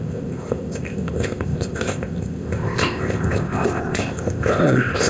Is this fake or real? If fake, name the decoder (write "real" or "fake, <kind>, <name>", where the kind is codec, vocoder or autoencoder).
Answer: fake, codec, ZipCodec